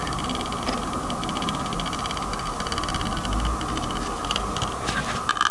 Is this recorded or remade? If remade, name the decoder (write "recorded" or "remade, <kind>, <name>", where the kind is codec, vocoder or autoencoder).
recorded